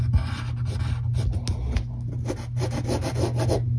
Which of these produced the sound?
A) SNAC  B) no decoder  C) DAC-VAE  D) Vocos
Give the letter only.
B